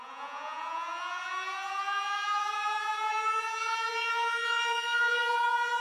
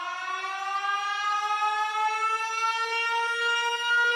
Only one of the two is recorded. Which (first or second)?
second